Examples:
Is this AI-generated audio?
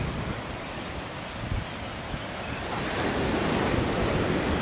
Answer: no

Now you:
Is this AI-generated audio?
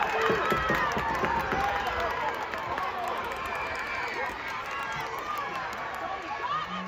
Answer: no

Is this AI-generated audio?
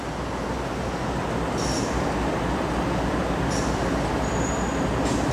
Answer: no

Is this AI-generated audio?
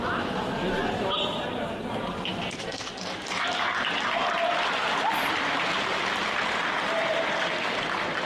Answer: no